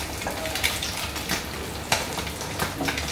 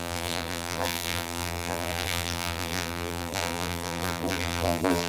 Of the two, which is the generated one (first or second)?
second